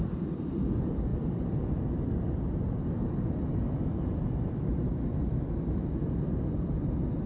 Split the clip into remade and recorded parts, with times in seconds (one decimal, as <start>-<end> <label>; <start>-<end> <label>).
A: 0.0-7.3 recorded